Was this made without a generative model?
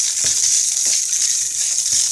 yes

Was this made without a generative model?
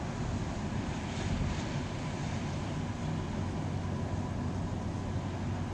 yes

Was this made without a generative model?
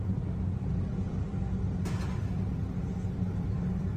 yes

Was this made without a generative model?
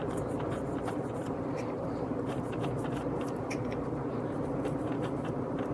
no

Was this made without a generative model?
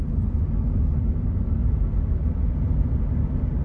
yes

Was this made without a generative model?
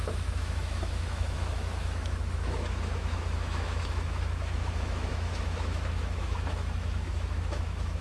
no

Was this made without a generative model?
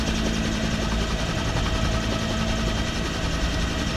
no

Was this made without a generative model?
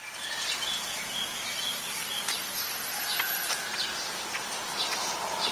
yes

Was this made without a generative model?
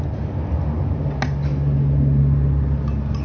yes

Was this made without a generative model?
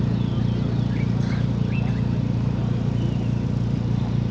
yes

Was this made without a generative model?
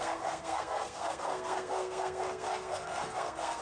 no